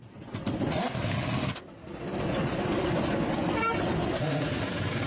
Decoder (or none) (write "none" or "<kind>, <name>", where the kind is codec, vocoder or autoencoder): vocoder, BigVGAN v2